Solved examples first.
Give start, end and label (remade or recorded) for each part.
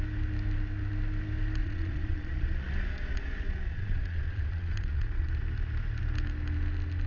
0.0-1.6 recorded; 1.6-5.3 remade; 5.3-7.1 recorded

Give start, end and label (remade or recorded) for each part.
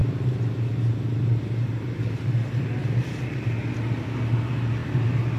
0.0-5.4 recorded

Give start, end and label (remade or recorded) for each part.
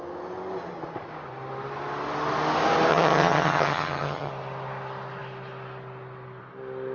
0.0-2.9 recorded; 2.9-4.3 remade; 4.3-6.9 recorded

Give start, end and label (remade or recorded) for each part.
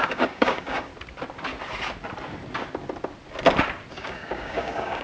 0.0-0.9 remade; 0.9-3.9 recorded; 3.9-5.0 remade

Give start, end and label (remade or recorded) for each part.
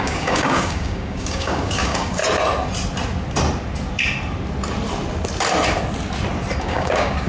0.0-2.2 remade; 2.2-6.6 recorded; 6.6-7.3 remade